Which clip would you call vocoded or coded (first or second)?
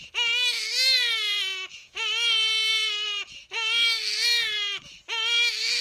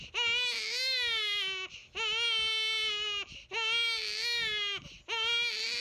first